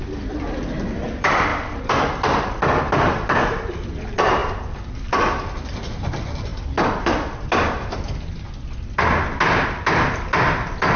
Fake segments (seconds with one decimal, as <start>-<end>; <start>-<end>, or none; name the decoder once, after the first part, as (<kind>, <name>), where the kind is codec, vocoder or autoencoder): none